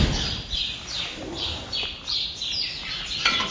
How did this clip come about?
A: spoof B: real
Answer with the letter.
B